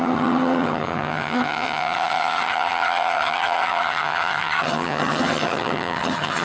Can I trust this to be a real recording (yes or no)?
no